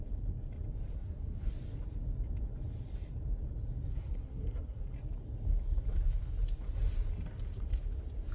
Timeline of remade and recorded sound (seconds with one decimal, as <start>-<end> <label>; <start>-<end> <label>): 0.0-0.9 recorded; 0.9-1.5 remade; 1.5-3.9 recorded; 3.9-4.8 remade; 4.8-8.3 recorded